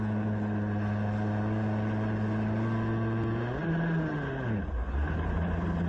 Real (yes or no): yes